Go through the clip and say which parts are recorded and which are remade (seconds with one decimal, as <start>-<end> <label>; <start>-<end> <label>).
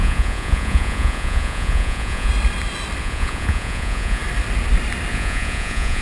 0.0-2.3 remade; 2.3-3.0 recorded; 3.0-4.2 remade; 4.2-5.1 recorded; 5.1-6.0 remade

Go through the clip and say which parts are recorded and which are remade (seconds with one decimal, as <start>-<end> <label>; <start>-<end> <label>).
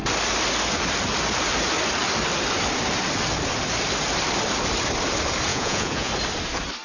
0.0-5.5 recorded; 5.5-6.1 remade; 6.1-6.8 recorded